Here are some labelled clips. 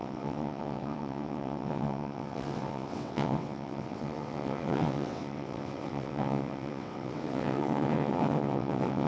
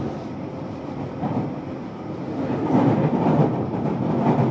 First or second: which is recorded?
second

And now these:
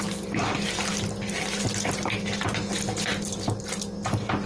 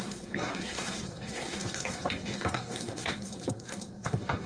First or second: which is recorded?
first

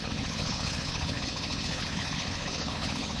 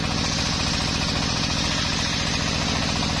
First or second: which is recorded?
second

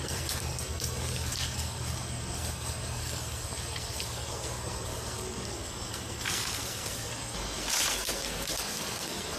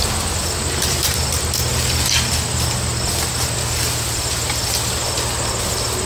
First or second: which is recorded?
second